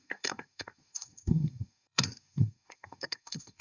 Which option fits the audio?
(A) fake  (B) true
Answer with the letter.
A